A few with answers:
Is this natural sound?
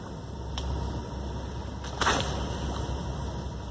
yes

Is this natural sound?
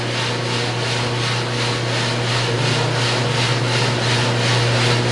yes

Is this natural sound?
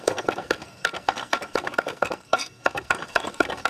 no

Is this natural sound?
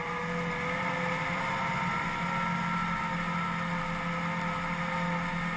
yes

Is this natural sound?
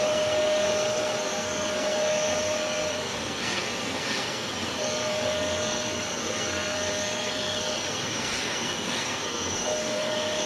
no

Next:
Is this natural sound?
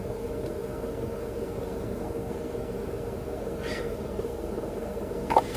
no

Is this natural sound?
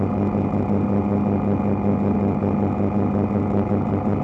yes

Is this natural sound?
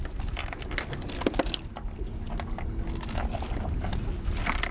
yes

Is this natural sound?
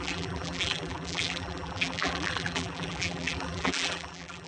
no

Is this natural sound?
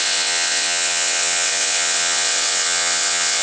no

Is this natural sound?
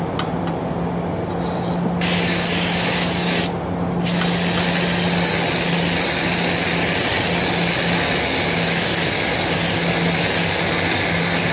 yes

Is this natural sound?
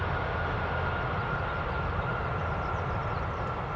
yes